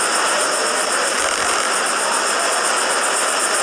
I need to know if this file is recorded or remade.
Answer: recorded